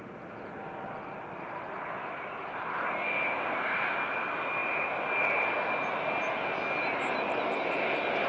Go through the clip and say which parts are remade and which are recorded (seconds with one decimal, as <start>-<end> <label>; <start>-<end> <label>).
0.0-8.3 recorded